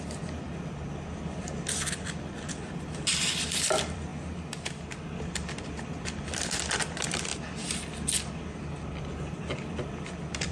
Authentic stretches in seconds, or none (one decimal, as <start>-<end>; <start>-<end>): 4.1-4.7; 7.3-9.0